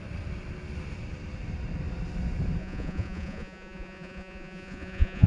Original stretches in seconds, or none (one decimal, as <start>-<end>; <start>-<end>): 0.0-2.6